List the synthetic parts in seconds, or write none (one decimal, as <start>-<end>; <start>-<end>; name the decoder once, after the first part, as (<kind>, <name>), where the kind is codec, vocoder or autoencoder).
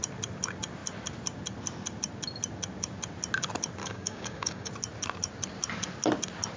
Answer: 3.8-4.7 (codec, DAC)